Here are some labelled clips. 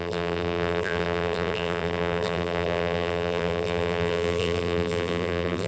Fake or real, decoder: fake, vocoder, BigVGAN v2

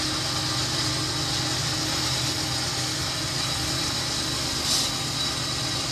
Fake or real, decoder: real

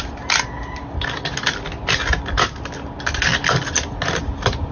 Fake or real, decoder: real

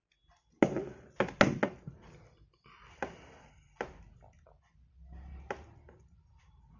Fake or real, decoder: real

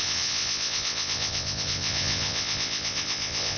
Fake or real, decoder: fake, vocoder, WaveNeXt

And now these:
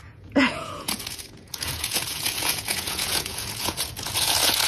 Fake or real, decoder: fake, vocoder, Vocos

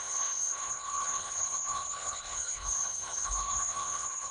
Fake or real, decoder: fake, codec, HILCodec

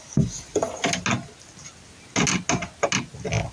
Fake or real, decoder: real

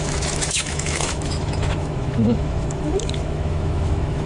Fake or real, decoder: fake, autoencoder, DAC-VAE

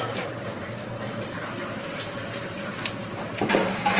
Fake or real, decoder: fake, vocoder, BigVGAN v2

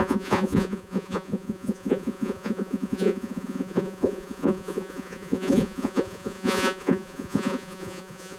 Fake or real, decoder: fake, vocoder, Vocos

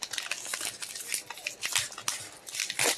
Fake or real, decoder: real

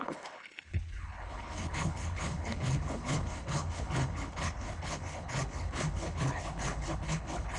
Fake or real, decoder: fake, codec, HILCodec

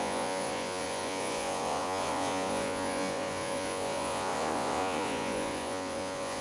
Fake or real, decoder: fake, vocoder, Vocos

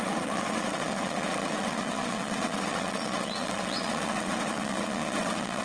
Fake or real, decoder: fake, vocoder, WaveNeXt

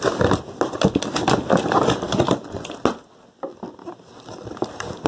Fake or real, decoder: real